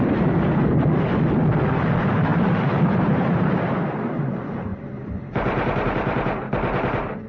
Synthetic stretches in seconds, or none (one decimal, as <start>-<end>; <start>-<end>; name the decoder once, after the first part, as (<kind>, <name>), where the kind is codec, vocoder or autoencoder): 2.3-3.6 (vocoder, BigVGAN v2); 4.7-6.5